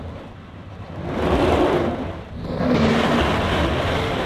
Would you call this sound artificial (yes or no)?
no